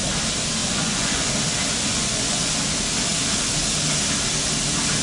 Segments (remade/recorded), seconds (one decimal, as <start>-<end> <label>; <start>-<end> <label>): 0.0-0.6 recorded; 0.6-1.3 remade; 1.3-1.9 recorded; 1.9-2.5 remade; 2.5-5.0 recorded